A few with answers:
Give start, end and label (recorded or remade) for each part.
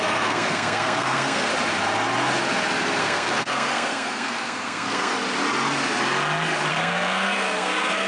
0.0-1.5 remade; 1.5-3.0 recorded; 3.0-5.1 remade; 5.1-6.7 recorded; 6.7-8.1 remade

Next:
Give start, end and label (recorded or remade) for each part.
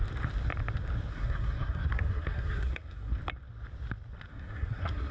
0.0-1.1 recorded; 1.1-3.1 remade; 3.1-4.3 recorded; 4.3-5.1 remade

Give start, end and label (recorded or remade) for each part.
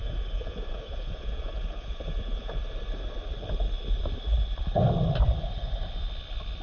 0.0-2.6 remade; 2.6-6.6 recorded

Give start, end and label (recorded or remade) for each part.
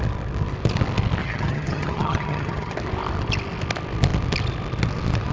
0.0-1.2 recorded; 1.2-2.7 remade; 2.7-5.3 recorded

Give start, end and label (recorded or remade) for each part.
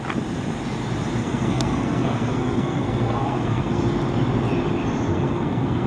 0.0-1.2 recorded; 1.2-3.8 remade; 3.8-5.1 recorded; 5.1-5.9 remade